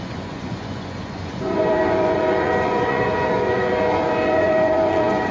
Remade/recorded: remade